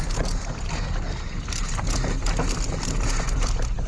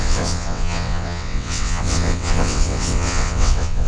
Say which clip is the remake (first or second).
second